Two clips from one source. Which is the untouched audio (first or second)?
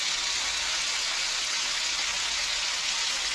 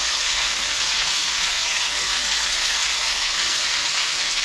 first